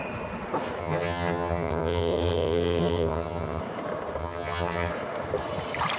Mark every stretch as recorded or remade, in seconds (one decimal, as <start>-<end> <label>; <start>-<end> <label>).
0.0-0.8 recorded; 0.8-3.6 remade; 3.6-4.2 recorded; 4.2-4.9 remade; 4.9-6.0 recorded

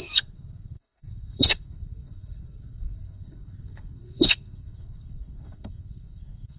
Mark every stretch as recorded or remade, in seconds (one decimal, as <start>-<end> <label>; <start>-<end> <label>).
0.0-6.6 remade